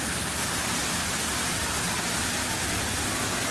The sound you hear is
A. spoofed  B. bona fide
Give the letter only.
B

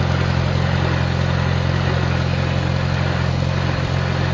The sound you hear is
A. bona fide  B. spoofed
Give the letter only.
A